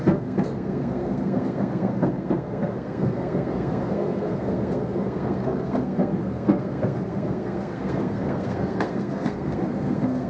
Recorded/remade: remade